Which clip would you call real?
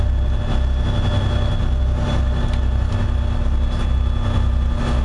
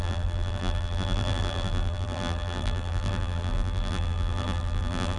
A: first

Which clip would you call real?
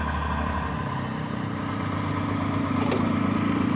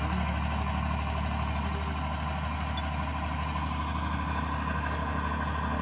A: second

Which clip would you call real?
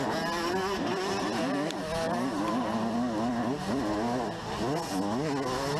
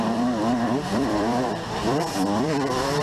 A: first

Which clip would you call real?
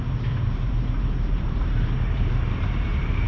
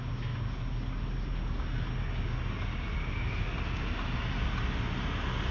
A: second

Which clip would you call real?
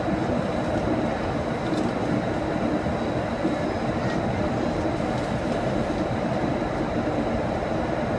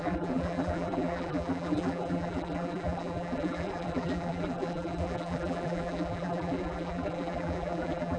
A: first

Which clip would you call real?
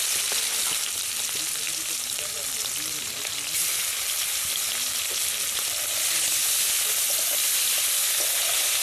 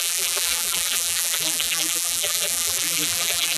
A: first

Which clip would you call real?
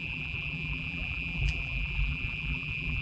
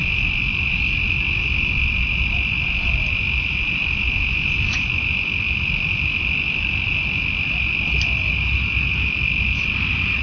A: second